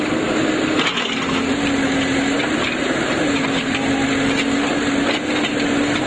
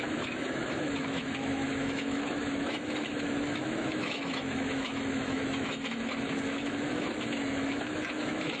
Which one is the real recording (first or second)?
first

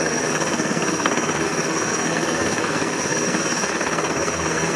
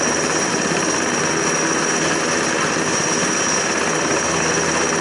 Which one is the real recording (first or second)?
second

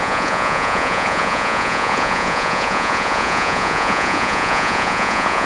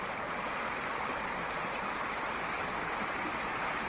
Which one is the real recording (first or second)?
second